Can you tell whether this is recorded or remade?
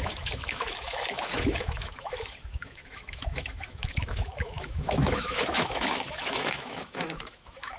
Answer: remade